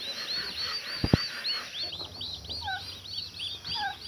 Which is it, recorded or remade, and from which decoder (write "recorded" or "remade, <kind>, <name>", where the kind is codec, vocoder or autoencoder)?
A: recorded